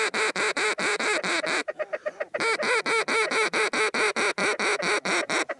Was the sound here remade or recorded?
recorded